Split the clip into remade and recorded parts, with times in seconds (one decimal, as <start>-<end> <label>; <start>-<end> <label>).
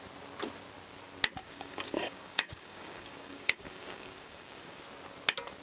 0.0-1.4 recorded; 1.4-4.8 remade; 4.8-5.6 recorded